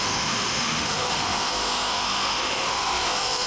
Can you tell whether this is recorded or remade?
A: remade